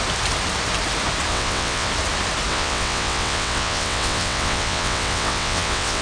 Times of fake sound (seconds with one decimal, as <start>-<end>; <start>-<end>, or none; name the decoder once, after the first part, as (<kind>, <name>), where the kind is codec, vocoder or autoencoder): 1.3-1.9 (vocoder, WaveNeXt); 2.5-6.0